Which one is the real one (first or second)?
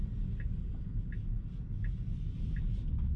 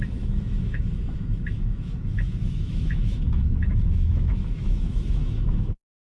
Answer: first